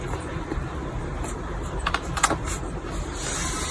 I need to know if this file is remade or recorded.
remade